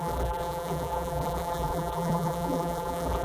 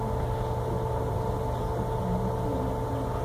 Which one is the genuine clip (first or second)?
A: second